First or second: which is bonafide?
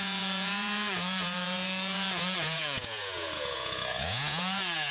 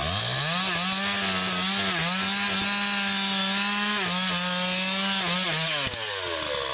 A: second